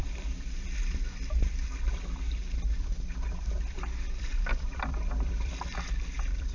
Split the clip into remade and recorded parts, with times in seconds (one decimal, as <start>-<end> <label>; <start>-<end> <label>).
0.0-6.5 remade